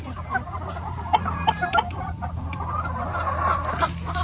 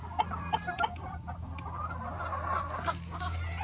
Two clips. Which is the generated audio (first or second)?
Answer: first